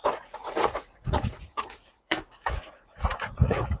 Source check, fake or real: fake